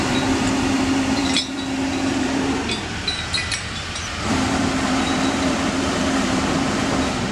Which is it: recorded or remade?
remade